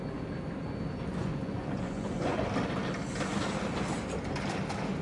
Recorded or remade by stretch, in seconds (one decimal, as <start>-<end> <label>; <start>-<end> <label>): 0.0-1.2 recorded; 1.2-2.4 remade; 2.4-5.0 recorded